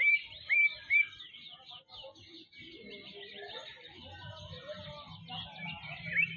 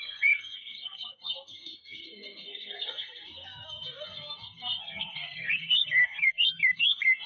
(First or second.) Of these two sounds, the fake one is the second